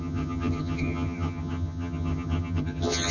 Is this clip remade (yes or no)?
yes